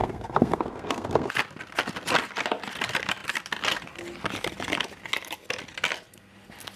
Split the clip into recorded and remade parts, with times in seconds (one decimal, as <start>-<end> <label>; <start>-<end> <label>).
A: 0.0-1.3 remade; 1.3-6.8 recorded